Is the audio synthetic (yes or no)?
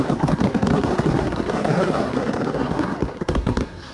yes